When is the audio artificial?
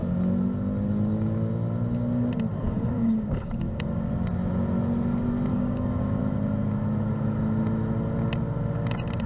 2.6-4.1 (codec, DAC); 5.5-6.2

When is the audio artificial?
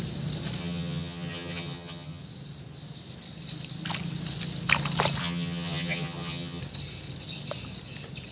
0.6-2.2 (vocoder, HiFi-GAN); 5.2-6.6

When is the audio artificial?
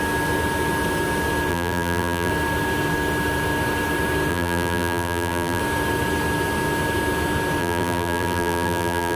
1.5-2.3 (vocoder, BigVGAN v2); 4.3-5.6; 7.6-9.2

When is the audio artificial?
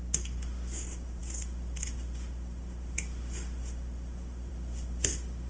0.0-5.5 (autoencoder, DAC-VAE)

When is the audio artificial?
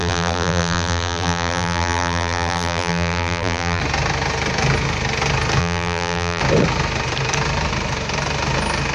0.0-3.8 (vocoder, BigVGAN v2); 5.6-6.4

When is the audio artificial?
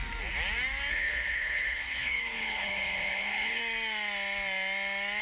0.9-3.6 (codec, HILCodec)